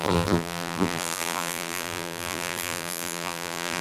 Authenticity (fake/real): fake